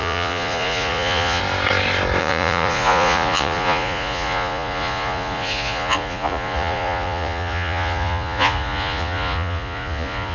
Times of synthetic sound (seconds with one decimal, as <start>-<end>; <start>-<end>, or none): 0.0-1.4; 2.2-10.3